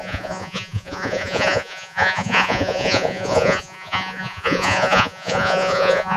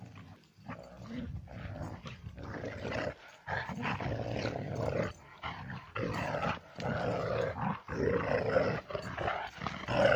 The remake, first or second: first